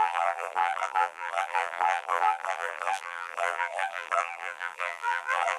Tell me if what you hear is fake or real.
fake